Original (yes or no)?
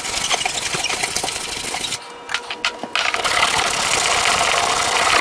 yes